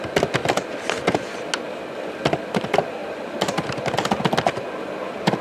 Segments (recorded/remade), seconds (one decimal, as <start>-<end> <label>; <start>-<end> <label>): 0.0-5.4 recorded